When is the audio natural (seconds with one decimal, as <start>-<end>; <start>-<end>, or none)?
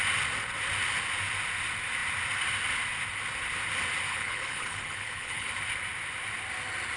0.0-4.1; 5.5-7.0